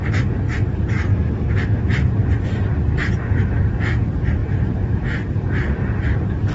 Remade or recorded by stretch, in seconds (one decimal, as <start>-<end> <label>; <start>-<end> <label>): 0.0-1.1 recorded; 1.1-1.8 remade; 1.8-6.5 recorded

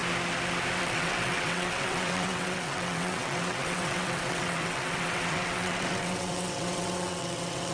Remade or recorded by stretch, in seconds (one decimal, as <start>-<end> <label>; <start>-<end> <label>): 0.0-0.8 recorded; 0.8-7.7 remade

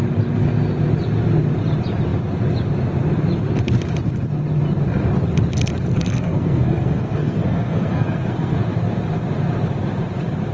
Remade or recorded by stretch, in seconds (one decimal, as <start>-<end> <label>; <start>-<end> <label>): 0.0-5.9 recorded; 5.9-8.7 remade; 8.7-10.5 recorded

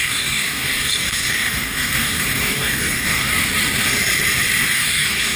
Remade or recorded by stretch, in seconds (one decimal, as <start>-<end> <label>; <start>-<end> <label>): 0.0-3.3 remade; 3.3-4.7 recorded; 4.7-5.4 remade